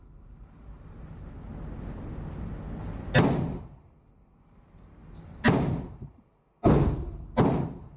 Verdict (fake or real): real